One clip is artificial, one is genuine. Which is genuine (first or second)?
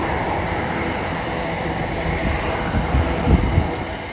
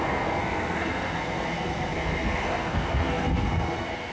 first